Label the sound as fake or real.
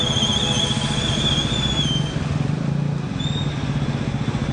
real